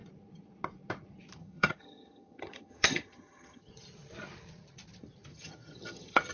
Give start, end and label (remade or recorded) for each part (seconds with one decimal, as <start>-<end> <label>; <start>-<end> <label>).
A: 0.0-1.4 recorded; 1.4-3.7 remade; 3.7-5.3 recorded; 5.3-6.3 remade